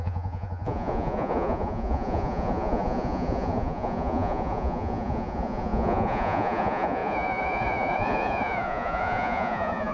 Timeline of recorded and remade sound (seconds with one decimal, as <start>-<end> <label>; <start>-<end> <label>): 0.0-9.9 remade